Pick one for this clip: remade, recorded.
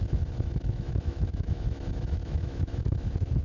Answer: remade